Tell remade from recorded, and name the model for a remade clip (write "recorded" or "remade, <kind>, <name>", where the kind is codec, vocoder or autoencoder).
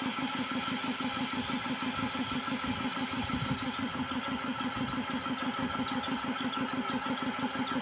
recorded